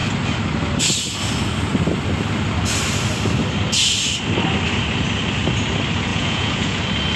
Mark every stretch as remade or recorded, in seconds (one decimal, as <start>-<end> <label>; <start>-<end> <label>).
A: 0.0-6.1 recorded; 6.1-6.8 remade; 6.8-7.2 recorded